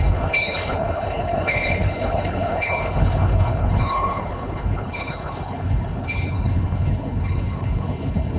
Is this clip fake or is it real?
fake